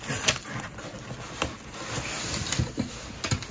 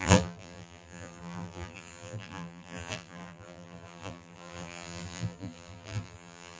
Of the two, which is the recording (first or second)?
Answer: first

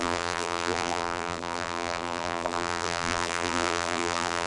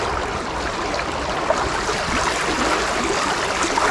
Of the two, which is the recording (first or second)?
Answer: second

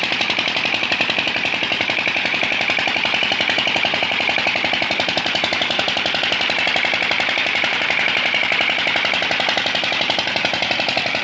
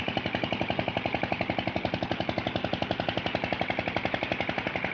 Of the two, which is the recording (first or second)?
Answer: second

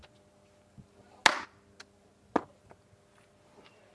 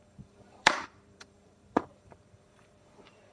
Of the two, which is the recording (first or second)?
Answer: first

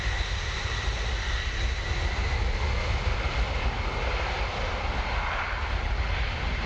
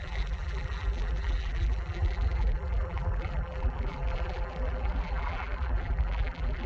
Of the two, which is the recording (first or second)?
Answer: first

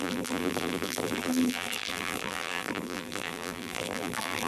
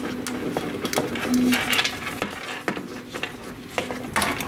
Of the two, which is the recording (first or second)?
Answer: second